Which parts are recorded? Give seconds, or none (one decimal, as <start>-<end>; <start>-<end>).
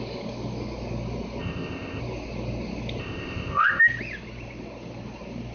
0.0-1.4; 2.0-3.0; 3.8-5.5